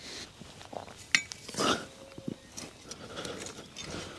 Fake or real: real